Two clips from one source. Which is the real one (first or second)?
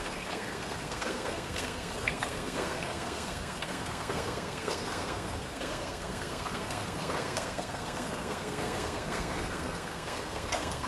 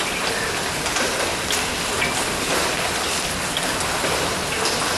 second